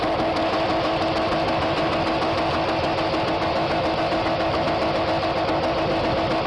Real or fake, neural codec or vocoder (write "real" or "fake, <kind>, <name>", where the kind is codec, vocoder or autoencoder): real